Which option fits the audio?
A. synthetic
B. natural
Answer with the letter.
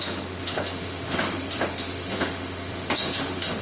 A